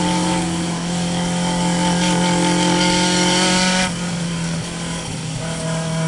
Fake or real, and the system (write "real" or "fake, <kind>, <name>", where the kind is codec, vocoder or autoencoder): fake, codec, DAC